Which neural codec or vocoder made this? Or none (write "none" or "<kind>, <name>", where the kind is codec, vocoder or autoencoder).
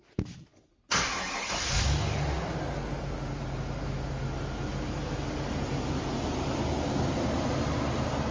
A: none